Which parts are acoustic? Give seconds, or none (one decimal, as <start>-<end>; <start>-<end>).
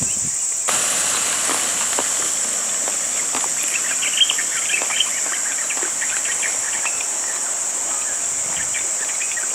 0.0-1.7; 2.9-4.4; 5.1-9.5